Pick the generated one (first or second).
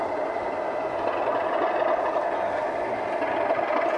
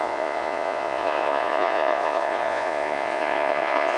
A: second